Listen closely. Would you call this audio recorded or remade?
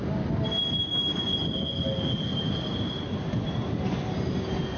recorded